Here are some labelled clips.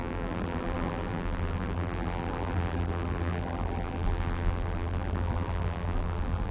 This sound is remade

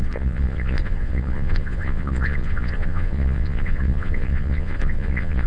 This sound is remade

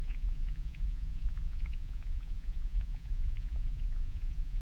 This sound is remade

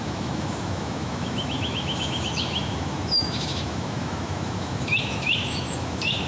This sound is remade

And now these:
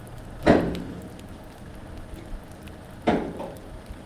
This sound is recorded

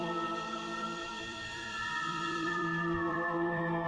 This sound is remade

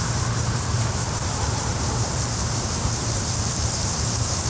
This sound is remade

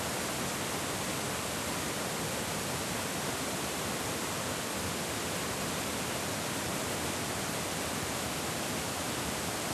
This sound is recorded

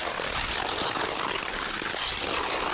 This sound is recorded